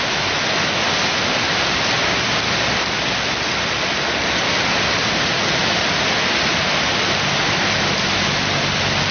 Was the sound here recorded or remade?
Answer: recorded